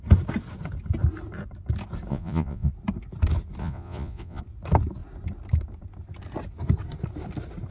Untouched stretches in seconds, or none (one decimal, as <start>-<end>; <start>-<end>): 0.0-2.1; 2.7-3.6; 4.4-7.7